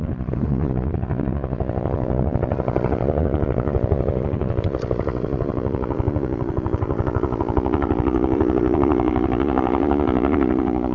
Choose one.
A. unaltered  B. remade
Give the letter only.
B